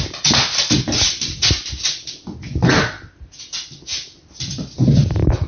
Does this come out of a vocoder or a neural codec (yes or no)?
no